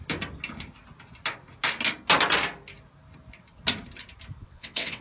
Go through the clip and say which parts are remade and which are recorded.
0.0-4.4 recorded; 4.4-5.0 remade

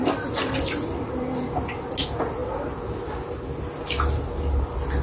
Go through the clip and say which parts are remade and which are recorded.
0.0-5.0 recorded

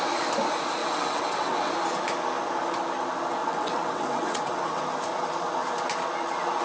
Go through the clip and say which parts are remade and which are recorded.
0.0-0.8 recorded; 0.8-1.7 remade; 1.7-3.4 recorded; 3.4-4.8 remade; 4.8-6.6 recorded

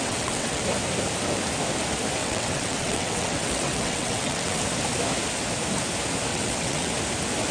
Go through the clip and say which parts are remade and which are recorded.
0.0-0.6 remade; 0.6-2.2 recorded; 2.2-4.6 remade; 4.6-6.3 recorded; 6.3-6.9 remade; 6.9-7.5 recorded

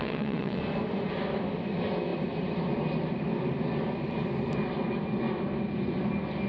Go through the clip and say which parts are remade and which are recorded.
0.0-0.6 remade; 0.6-6.5 recorded

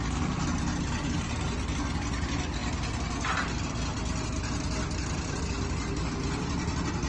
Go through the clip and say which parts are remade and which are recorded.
0.0-7.1 recorded

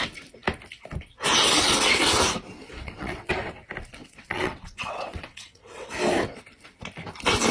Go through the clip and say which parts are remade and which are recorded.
0.0-2.7 recorded; 2.7-3.3 remade; 3.3-4.0 recorded; 4.0-5.9 remade; 5.9-7.5 recorded